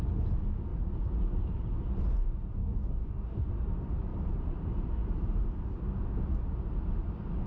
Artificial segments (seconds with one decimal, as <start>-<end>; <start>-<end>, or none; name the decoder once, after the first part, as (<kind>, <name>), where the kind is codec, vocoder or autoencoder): 2.6-3.5 (codec, DAC)